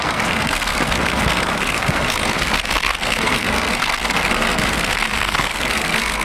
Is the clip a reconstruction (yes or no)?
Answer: yes